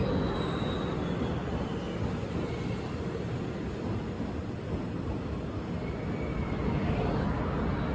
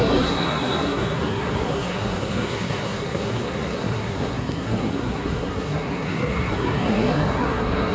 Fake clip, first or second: second